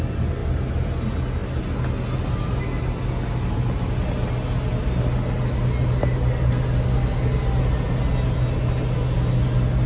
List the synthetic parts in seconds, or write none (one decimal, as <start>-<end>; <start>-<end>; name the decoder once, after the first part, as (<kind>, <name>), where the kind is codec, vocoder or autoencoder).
none